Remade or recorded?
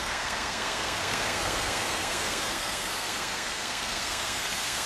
remade